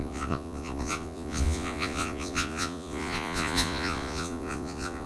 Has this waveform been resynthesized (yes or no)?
yes